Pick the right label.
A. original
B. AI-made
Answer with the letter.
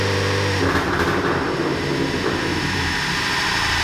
B